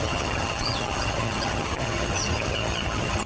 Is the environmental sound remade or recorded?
remade